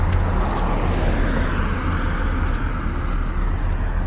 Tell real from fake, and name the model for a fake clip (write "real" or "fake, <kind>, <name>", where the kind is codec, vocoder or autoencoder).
real